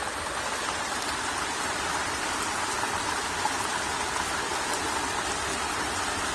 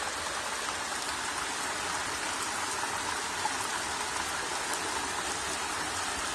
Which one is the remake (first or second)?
first